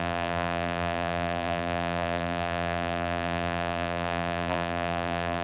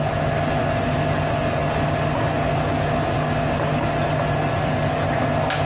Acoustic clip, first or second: second